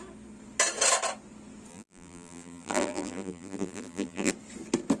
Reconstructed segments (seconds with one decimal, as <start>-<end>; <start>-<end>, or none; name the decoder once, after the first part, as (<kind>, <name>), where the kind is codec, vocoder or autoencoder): 1.7-4.3 (vocoder, BigVGAN v2)